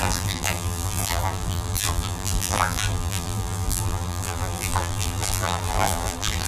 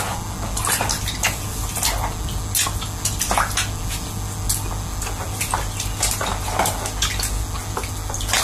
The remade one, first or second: first